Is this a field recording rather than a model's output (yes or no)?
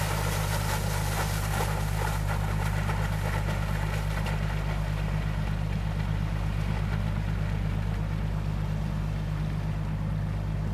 yes